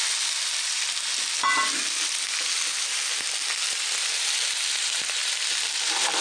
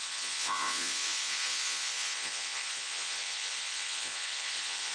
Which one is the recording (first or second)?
first